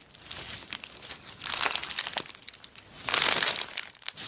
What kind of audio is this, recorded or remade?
recorded